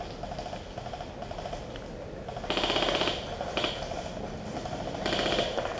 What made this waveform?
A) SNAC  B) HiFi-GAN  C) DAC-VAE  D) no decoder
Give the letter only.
D